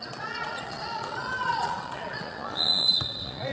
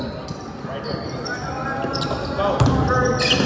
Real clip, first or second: second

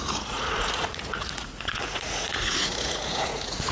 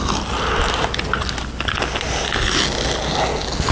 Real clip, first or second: second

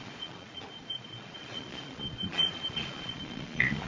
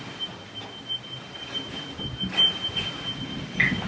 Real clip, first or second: second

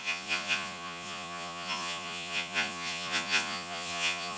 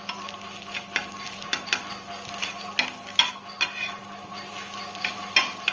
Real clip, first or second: second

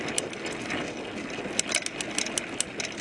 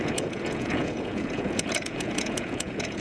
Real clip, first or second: first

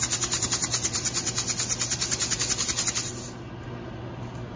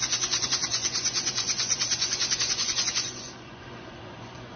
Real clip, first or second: first